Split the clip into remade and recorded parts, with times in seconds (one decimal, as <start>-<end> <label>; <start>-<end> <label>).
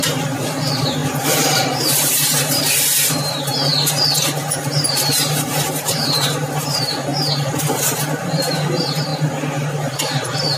0.0-3.7 remade; 3.7-4.6 recorded; 4.6-9.1 remade; 9.1-10.6 recorded